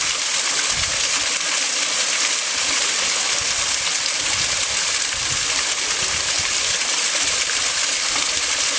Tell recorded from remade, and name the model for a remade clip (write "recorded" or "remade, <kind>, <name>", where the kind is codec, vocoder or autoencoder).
recorded